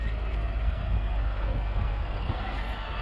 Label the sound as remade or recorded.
remade